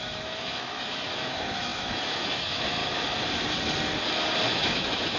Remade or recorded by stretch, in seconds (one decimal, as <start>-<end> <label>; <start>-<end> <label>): 0.0-2.8 remade; 2.8-4.5 recorded; 4.5-5.2 remade